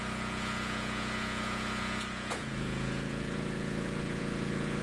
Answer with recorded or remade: remade